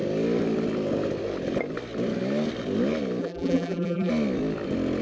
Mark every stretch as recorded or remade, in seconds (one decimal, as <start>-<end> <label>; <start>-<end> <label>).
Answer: 0.0-3.2 recorded; 3.2-4.1 remade; 4.1-5.0 recorded